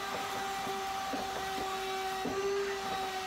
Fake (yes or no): no